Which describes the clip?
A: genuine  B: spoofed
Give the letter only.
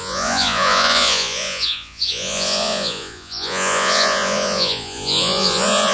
B